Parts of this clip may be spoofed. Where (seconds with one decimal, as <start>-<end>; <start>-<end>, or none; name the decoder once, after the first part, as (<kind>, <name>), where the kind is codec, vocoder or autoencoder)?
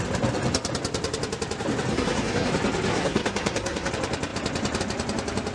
1.9-2.5 (codec, SNAC); 2.9-3.9